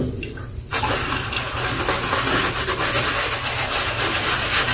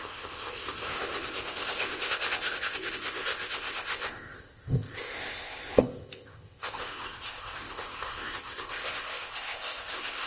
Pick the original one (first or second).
first